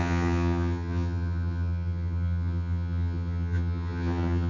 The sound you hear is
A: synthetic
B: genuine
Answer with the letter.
A